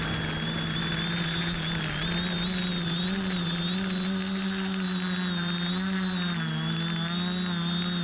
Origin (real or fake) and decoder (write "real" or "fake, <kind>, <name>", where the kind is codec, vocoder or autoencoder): real